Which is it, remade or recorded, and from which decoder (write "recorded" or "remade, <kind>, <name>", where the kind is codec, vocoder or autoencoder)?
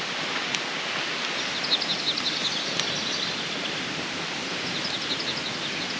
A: recorded